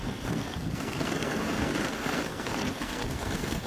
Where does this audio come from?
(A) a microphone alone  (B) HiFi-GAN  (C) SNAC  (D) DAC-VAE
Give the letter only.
C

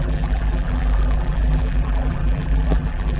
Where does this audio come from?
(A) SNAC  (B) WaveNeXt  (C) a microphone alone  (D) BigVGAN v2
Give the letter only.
D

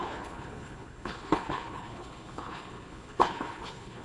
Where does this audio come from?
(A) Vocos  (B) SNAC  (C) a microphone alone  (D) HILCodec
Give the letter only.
D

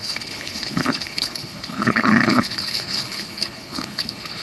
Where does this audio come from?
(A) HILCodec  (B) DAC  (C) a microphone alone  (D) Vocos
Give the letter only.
A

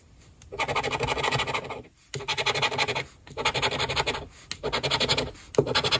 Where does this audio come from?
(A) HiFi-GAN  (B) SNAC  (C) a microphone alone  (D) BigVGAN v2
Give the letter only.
C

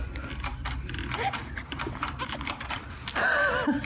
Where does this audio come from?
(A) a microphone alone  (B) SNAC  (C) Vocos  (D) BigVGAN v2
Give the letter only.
D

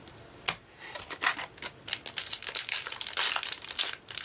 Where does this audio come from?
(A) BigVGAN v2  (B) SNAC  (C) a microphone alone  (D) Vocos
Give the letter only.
C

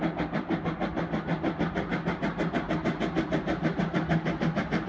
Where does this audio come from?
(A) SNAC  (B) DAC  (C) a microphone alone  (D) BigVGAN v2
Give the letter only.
C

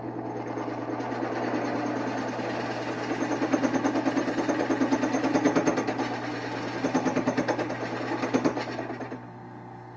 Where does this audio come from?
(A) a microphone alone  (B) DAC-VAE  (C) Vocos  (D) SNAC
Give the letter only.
A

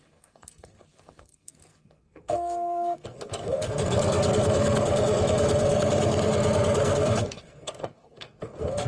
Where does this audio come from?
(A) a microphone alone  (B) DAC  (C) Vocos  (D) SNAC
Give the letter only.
D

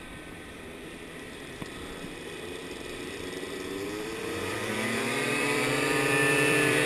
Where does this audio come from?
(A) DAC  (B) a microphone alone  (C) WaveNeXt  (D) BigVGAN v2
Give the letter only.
D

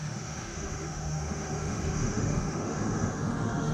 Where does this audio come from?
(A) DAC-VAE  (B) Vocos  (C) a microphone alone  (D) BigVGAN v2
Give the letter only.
A